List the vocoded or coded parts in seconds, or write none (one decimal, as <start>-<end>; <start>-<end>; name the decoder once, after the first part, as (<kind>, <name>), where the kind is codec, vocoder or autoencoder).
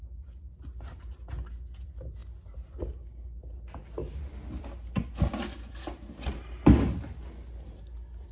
none